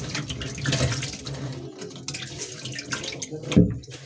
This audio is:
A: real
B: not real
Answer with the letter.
A